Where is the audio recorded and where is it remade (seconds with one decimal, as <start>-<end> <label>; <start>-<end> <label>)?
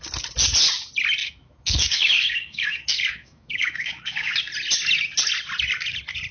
0.0-1.2 recorded; 1.2-4.4 remade; 4.4-6.3 recorded